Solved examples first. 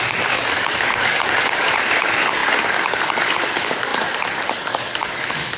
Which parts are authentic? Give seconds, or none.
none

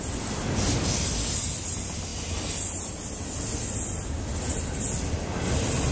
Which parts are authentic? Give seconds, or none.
0.0-5.9